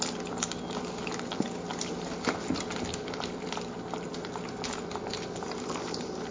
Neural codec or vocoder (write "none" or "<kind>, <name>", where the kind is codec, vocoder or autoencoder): none